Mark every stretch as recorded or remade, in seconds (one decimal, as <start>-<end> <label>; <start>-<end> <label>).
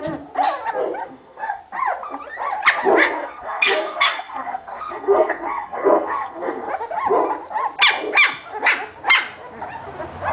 0.0-1.0 recorded; 1.0-1.6 remade; 1.6-3.0 recorded; 3.0-6.7 remade; 6.7-10.3 recorded